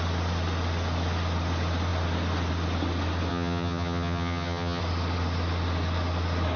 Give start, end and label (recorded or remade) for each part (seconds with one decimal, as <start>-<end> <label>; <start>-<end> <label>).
0.0-3.3 recorded; 3.3-4.8 remade; 4.8-6.6 recorded